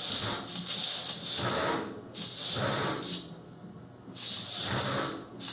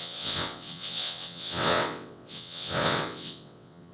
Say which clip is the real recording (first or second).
first